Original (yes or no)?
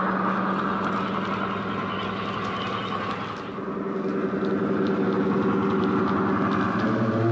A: yes